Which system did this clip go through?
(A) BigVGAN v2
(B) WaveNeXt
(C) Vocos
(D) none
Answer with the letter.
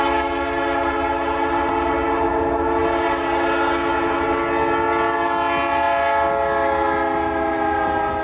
D